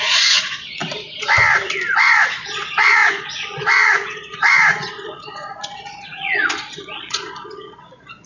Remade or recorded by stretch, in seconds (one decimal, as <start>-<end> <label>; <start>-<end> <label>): 0.0-0.8 remade; 0.8-2.0 recorded; 2.0-8.3 remade